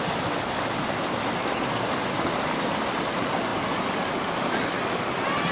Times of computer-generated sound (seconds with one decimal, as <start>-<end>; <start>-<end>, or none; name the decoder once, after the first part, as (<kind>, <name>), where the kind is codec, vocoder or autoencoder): none